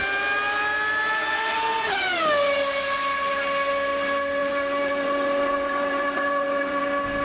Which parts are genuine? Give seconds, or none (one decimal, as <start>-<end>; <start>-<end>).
0.0-4.4; 6.8-7.2